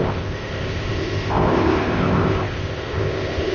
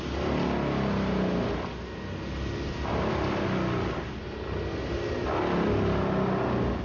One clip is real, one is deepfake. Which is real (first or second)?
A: second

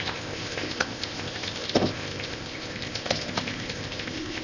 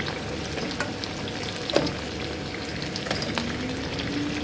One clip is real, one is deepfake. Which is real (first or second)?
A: second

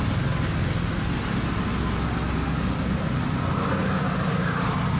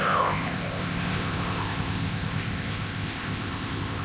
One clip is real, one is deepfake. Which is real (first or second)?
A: first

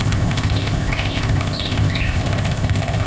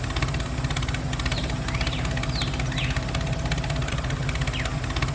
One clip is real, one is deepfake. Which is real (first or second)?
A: second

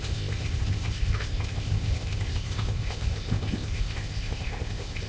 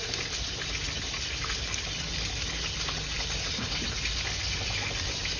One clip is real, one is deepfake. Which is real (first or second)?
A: second